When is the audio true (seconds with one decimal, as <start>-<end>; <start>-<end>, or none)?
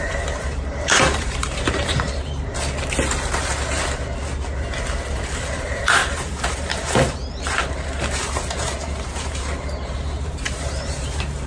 2.5-5.1